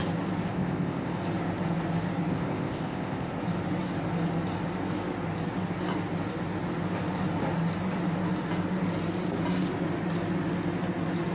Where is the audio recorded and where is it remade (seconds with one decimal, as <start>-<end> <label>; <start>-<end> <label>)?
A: 0.0-0.5 recorded; 0.5-1.2 remade; 1.2-2.3 recorded; 2.3-3.3 remade; 3.3-11.3 recorded